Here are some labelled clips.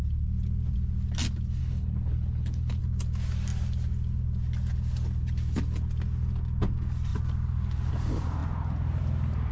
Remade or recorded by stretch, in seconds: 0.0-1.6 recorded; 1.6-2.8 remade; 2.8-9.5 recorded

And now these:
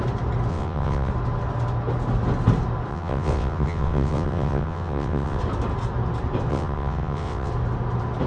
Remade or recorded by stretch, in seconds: 0.0-0.5 recorded; 0.5-1.1 remade; 1.1-2.9 recorded; 2.9-5.4 remade; 5.4-6.5 recorded; 6.5-7.5 remade; 7.5-8.3 recorded

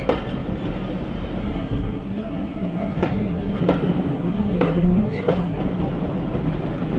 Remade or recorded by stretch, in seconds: 0.0-1.4 recorded; 1.4-3.6 remade; 3.6-4.1 recorded; 4.1-5.6 remade; 5.6-7.0 recorded

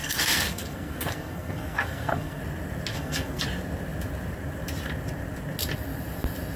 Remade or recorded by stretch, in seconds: 0.0-2.4 remade; 2.4-2.9 recorded; 2.9-3.4 remade; 3.4-6.6 recorded

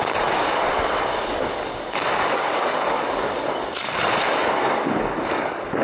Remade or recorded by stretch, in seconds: 0.0-5.8 remade

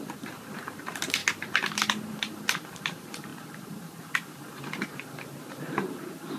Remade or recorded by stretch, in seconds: 0.0-1.2 remade; 1.2-2.1 recorded; 2.1-6.4 remade